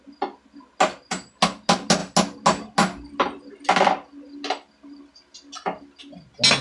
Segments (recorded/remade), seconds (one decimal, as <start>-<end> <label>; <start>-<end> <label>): 0.0-6.6 recorded